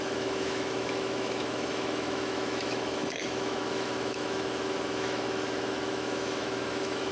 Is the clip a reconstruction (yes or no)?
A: yes